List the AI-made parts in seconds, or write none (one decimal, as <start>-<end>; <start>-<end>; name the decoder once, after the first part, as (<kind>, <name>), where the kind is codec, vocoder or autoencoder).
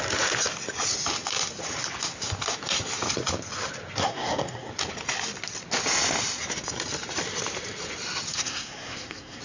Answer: 4.0-4.7 (codec, SNAC); 8.3-9.4